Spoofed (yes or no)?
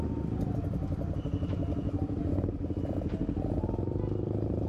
no